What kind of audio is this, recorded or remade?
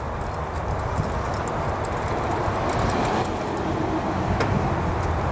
recorded